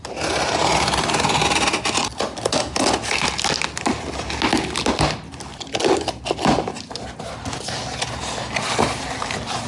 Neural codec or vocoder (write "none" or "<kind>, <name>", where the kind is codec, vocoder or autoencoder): none